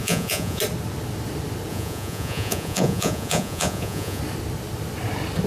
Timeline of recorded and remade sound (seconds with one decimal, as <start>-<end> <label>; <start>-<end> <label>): 0.0-0.6 remade; 0.6-1.7 recorded; 1.7-4.2 remade; 4.2-5.5 recorded